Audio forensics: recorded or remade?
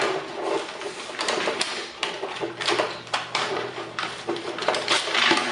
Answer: remade